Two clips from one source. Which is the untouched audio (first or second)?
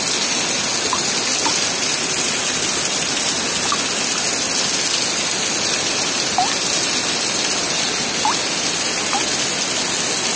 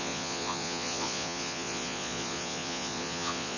first